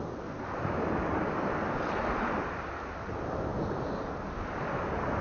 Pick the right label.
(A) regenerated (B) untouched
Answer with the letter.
B